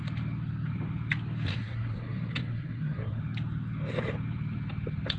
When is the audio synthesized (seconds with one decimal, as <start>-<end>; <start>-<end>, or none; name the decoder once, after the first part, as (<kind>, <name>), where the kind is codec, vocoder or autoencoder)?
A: 1.5-3.2 (codec, SNAC)